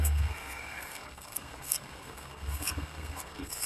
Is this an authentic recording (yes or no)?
no